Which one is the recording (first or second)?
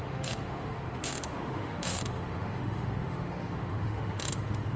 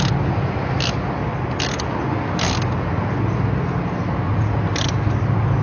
second